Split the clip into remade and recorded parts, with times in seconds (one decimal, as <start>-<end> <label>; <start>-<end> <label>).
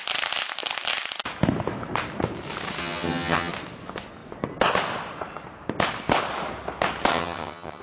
0.0-2.8 recorded; 2.8-3.5 remade; 3.5-7.1 recorded; 7.1-7.8 remade